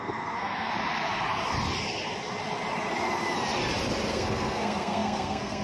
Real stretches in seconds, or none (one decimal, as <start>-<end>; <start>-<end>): 0.7-4.1